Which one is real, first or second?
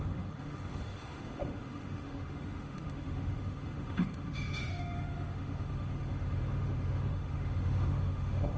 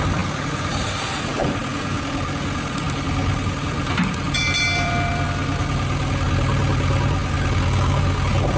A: second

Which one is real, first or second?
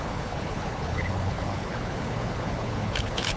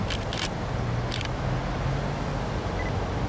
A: second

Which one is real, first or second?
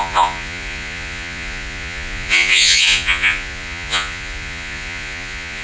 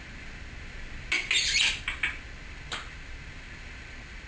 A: second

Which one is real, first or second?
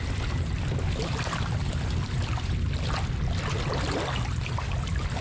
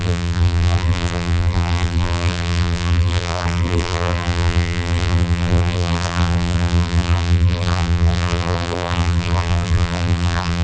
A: first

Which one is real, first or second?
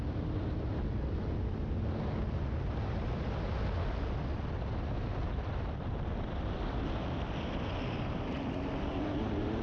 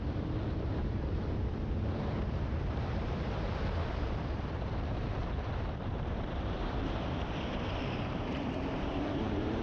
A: first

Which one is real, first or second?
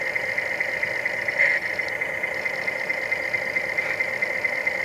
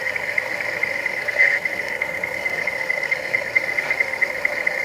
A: first